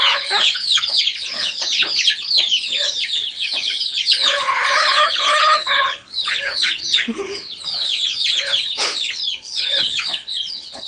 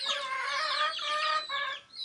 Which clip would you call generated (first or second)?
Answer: first